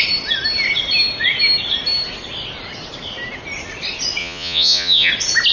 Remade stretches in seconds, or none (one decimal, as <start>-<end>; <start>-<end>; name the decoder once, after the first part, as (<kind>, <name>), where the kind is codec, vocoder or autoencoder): 4.2-5.1 (vocoder, Vocos)